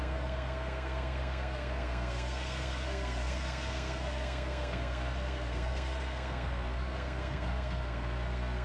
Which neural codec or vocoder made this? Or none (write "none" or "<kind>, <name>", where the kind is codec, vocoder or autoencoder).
codec, SNAC